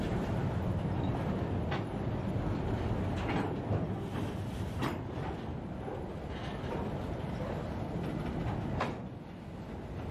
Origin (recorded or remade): recorded